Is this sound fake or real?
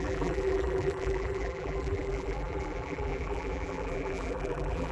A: fake